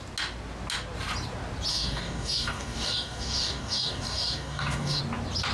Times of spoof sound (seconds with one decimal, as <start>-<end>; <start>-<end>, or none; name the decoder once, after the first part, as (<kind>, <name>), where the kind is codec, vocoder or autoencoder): 1.7-5.0 (codec, DAC)